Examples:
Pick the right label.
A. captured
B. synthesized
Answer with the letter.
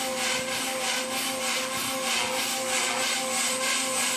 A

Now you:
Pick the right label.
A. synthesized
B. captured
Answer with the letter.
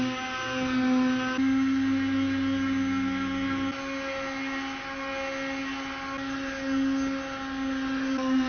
B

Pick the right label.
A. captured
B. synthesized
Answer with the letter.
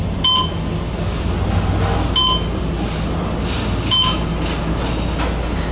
A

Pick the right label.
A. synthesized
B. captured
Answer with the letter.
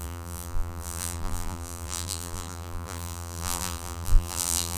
A